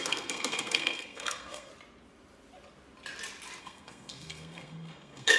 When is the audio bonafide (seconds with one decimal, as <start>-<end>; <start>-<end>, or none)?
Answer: 1.7-3.6